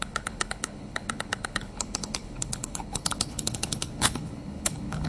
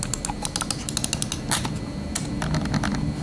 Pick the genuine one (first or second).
second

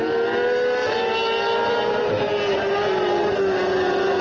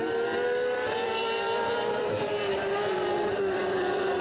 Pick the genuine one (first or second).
first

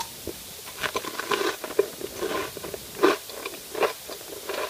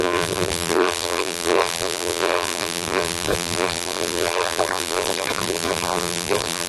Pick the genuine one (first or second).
first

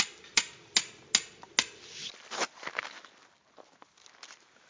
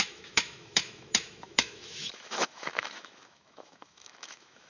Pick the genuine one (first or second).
first